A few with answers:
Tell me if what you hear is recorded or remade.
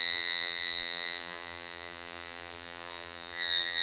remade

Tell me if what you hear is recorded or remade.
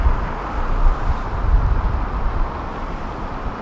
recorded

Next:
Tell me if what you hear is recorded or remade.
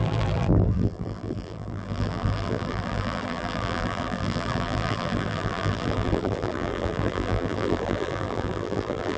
remade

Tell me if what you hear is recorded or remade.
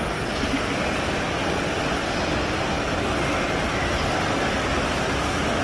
recorded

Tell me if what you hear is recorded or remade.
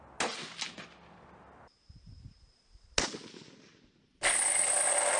recorded